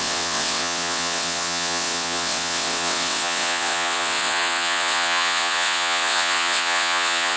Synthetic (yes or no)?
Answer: yes